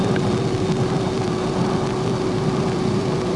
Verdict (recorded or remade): recorded